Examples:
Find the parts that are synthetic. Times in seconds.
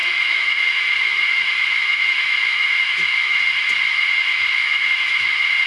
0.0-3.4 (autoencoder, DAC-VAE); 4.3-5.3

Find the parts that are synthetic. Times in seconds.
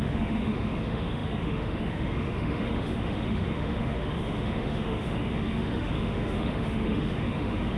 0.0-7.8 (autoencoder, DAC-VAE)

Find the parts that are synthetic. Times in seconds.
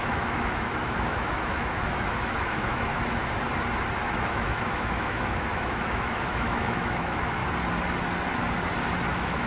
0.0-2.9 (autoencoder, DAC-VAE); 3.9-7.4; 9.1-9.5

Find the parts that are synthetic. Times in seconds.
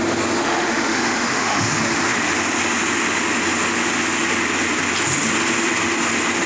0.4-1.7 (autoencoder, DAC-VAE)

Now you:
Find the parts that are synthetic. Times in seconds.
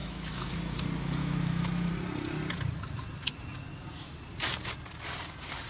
0.0-0.5 (autoencoder, DAC-VAE); 1.2-1.9